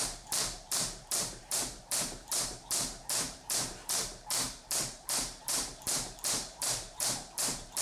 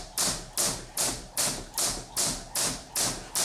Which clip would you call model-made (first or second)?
first